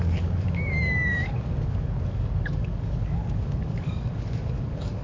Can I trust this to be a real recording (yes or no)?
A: no